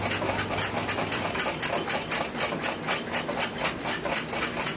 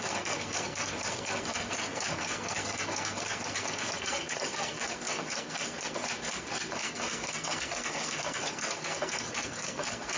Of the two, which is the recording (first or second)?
first